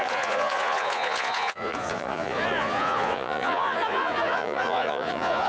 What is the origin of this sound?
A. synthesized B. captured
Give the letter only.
A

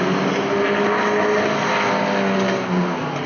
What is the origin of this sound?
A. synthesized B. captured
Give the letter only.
B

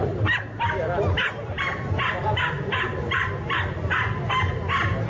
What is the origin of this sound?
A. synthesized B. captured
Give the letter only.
B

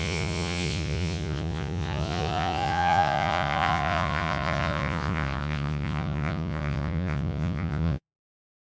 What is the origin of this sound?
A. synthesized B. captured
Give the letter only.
A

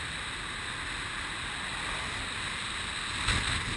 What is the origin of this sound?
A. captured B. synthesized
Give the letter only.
A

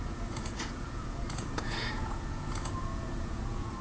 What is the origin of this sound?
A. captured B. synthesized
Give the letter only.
B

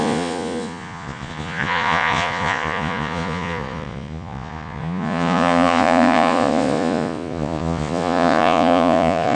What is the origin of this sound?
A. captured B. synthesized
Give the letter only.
B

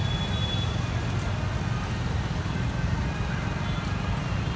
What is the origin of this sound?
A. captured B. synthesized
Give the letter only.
A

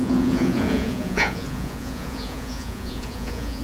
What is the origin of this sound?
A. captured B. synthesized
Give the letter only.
B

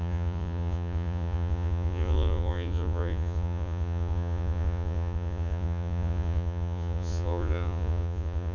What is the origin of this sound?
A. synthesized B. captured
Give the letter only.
A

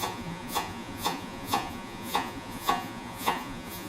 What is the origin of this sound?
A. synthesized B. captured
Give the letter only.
A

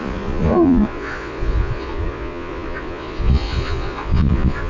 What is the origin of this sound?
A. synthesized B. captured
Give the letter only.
A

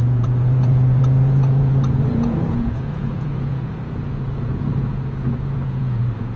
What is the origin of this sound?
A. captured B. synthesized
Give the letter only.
B